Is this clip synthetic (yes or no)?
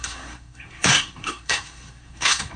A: yes